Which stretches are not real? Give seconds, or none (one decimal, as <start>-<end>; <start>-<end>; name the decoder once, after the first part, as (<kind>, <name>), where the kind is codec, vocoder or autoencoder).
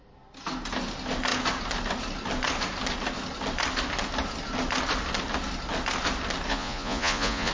6.5-7.5 (vocoder, Vocos)